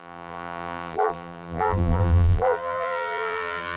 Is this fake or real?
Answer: fake